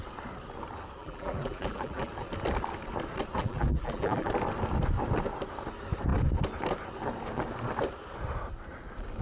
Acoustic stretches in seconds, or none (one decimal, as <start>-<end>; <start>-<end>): 0.0-1.0; 2.1-3.4; 4.3-9.2